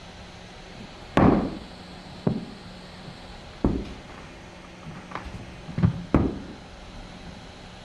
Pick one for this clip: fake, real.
real